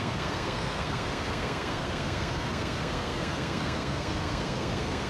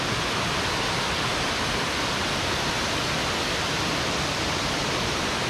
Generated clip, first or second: first